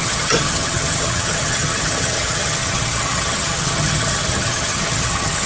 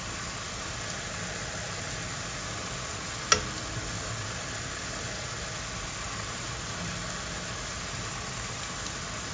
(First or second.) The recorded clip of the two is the second